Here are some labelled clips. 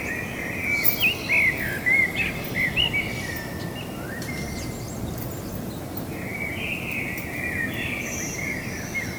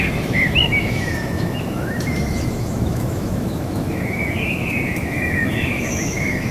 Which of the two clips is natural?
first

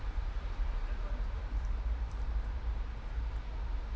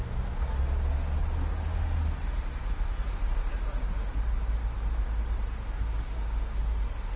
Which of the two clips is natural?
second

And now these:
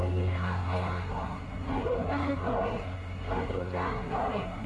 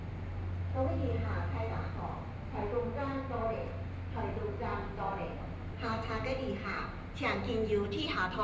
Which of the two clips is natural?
second